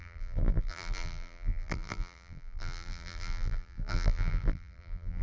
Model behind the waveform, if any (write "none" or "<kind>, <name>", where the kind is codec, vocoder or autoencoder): vocoder, BigVGAN v2